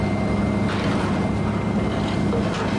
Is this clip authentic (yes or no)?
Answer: yes